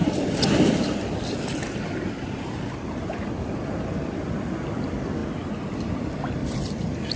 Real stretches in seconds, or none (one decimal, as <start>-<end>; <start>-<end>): 1.6-6.4